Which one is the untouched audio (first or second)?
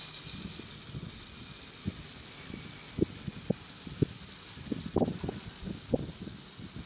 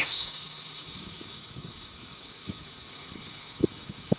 first